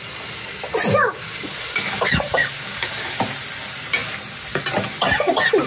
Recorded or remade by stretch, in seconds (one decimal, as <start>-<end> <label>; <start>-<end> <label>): 0.0-1.0 recorded; 1.0-3.2 remade; 3.2-5.7 recorded